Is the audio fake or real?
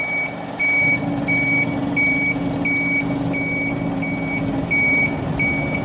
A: real